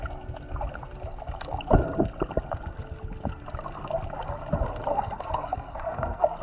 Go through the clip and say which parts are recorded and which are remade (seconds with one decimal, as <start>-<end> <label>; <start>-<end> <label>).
0.0-4.9 recorded; 4.9-6.4 remade